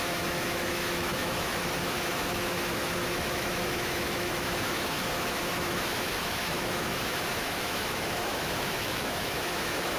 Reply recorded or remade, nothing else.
remade